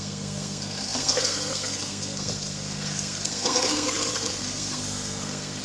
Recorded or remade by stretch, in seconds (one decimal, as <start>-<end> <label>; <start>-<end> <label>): 0.0-5.6 remade